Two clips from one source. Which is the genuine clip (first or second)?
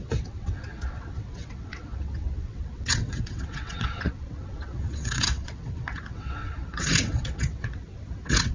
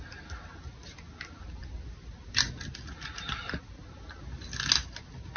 second